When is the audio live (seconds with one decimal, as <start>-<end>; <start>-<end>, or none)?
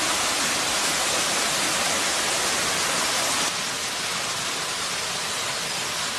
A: 0.0-6.2